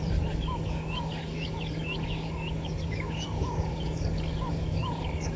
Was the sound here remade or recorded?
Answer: remade